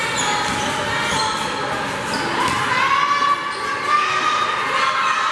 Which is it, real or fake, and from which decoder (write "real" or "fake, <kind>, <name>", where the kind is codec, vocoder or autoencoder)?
real